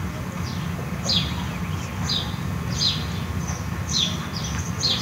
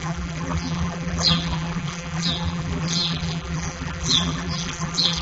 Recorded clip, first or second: first